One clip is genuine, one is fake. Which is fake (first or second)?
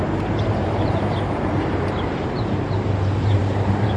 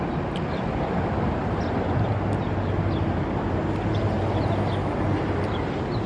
first